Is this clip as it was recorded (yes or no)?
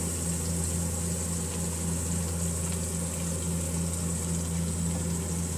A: yes